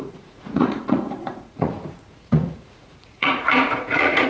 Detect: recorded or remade remade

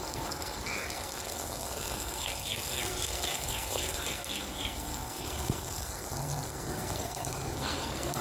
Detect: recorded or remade remade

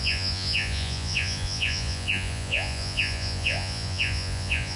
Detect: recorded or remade remade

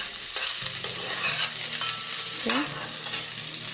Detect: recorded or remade recorded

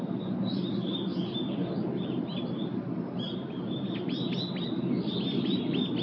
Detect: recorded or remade recorded